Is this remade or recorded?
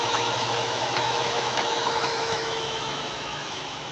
remade